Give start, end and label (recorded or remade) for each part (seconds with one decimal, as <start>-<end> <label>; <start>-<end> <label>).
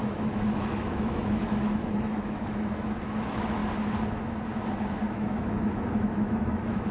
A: 0.0-3.6 remade; 3.6-5.1 recorded; 5.1-6.9 remade